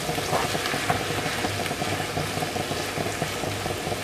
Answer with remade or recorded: recorded